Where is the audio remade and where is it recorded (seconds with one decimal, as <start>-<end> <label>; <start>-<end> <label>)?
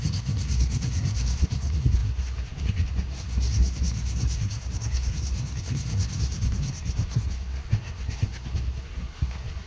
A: 0.0-9.7 remade